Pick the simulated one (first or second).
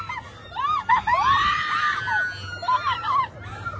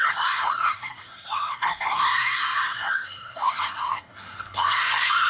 second